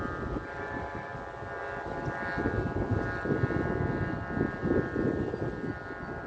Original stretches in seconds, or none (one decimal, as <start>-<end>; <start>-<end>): 0.0-6.3